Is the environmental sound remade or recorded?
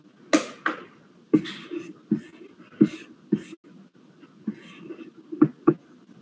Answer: recorded